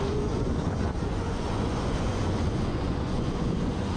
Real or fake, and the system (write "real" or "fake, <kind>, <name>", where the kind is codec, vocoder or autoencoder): fake, vocoder, Vocos